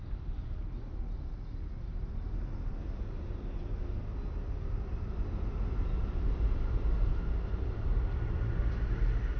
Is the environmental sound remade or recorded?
recorded